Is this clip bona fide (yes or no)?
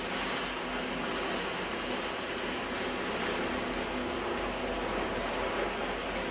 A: yes